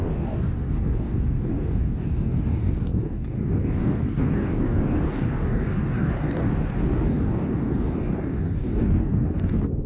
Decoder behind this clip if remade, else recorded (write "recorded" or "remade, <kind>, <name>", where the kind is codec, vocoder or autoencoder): remade, codec, DAC